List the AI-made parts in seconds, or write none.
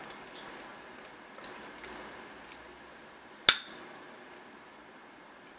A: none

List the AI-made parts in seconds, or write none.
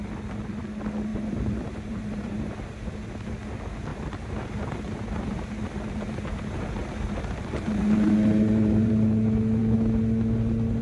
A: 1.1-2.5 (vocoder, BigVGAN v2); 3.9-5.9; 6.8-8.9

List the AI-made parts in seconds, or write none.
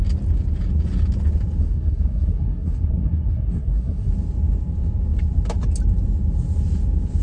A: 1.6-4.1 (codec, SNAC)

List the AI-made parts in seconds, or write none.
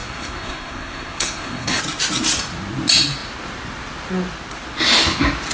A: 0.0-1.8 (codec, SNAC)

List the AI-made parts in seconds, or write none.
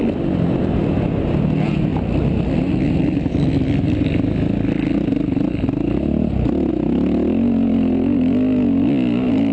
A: none